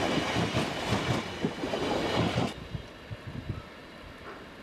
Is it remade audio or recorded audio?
recorded